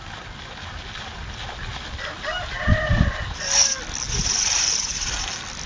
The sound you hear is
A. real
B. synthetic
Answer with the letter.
A